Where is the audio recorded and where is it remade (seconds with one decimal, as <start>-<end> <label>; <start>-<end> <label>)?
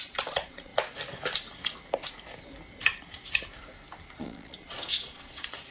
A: 0.0-0.7 remade; 0.7-4.1 recorded; 4.1-5.7 remade